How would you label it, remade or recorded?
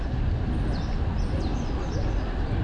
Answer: recorded